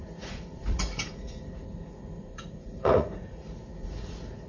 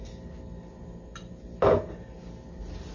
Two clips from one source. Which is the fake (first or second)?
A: first